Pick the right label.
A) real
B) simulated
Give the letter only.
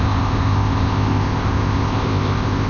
B